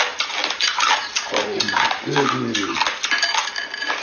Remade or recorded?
recorded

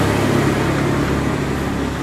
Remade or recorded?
recorded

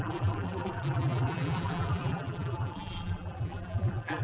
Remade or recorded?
remade